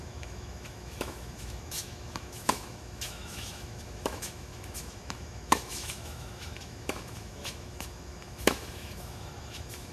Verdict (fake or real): fake